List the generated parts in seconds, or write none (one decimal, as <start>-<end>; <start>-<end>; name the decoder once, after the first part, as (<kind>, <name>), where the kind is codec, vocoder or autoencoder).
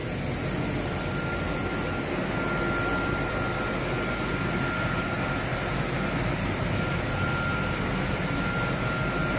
none